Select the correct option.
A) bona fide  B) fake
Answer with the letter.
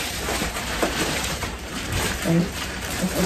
B